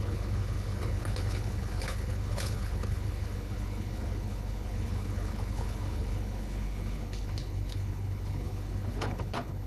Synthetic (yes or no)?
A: yes